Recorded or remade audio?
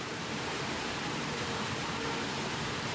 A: remade